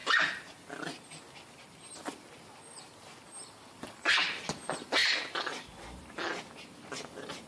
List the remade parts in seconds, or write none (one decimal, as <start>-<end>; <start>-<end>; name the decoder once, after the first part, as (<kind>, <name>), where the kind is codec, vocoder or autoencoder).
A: 5.0-7.1 (vocoder, BigVGAN v2)